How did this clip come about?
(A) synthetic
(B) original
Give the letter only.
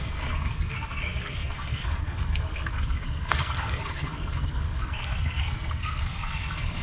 A